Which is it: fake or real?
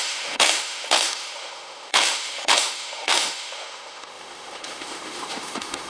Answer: fake